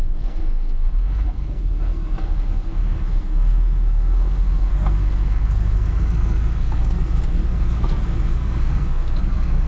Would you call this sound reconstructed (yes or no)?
yes